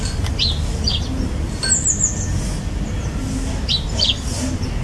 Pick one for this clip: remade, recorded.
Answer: recorded